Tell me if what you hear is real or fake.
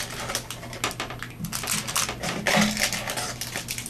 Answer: real